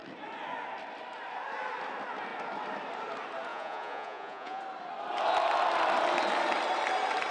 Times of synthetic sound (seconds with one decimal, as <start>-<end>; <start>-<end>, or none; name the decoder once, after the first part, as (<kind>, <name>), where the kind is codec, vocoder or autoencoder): 3.5-4.6 (vocoder, Vocos)

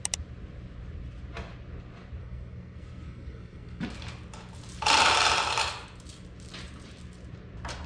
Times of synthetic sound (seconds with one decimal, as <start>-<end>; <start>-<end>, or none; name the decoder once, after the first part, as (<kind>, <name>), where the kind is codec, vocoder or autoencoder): 2.2-3.8 (codec, SNAC)

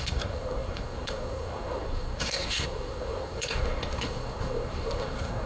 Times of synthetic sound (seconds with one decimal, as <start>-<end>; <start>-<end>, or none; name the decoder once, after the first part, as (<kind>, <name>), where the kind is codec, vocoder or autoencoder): 0.0-5.5 (codec, SNAC)

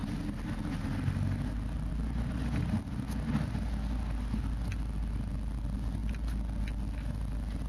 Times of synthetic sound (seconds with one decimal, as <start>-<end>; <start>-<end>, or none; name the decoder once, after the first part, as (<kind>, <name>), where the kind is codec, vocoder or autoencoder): none

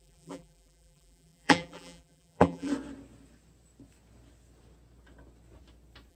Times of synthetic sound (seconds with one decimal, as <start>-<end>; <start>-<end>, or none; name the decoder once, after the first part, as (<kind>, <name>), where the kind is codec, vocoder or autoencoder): 0.0-2.7 (vocoder, BigVGAN v2)

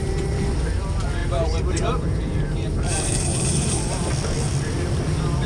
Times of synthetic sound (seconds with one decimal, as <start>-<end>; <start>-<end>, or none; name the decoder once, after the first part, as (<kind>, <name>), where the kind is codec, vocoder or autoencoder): 0.0-0.5 (vocoder, BigVGAN v2); 1.2-4.1

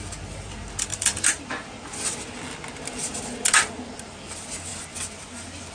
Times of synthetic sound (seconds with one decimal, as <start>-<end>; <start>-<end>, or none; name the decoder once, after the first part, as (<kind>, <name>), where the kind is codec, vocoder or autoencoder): 0.9-1.4 (vocoder, BigVGAN v2)